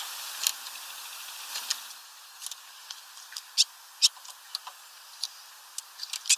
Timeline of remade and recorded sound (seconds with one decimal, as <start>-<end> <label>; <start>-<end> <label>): 0.0-6.4 recorded